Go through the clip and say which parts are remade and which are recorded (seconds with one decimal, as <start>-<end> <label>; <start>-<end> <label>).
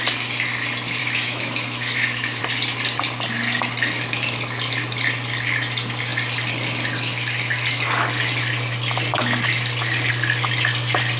0.0-1.0 recorded; 1.0-2.4 remade; 2.4-11.2 recorded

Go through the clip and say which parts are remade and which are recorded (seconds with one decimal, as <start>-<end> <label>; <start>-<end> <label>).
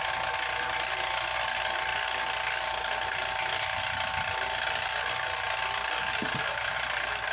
0.0-7.3 recorded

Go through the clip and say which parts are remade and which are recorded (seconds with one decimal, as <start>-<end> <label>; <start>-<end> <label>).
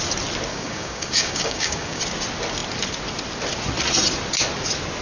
0.0-0.5 recorded; 0.5-2.0 remade; 2.0-5.0 recorded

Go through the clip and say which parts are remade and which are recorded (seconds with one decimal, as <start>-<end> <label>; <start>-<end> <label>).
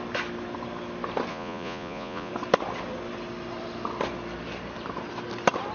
0.0-1.3 recorded; 1.3-2.3 remade; 2.3-5.7 recorded